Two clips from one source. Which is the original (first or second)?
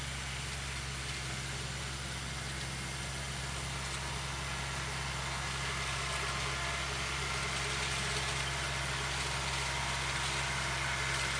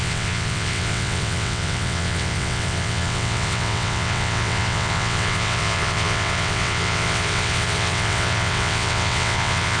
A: first